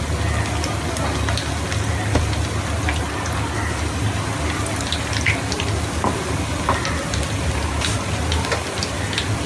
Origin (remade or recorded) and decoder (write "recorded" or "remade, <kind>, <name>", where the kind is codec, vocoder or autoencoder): recorded